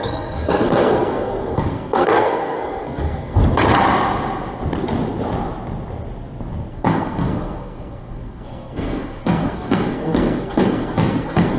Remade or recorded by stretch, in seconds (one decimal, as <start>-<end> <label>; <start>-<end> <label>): 0.0-3.4 remade; 3.4-6.7 recorded; 6.7-11.6 remade

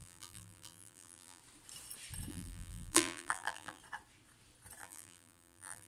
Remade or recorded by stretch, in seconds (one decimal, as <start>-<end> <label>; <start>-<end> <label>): 0.0-1.4 remade; 1.4-2.3 recorded; 2.3-3.8 remade; 3.8-4.8 recorded; 4.8-5.9 remade